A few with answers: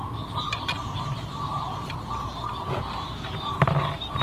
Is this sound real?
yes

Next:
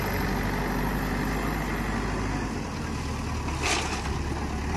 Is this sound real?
yes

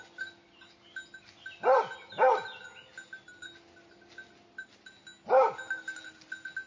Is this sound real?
yes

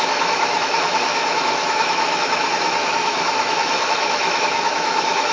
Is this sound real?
no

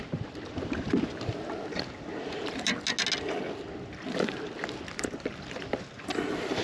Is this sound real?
yes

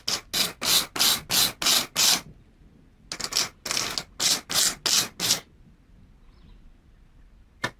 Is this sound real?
yes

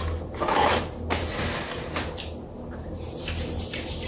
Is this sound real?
yes